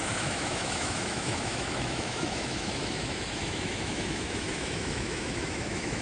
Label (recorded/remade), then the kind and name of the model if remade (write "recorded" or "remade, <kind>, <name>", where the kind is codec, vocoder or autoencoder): remade, autoencoder, DAC-VAE